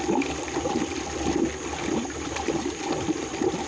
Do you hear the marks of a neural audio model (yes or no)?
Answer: yes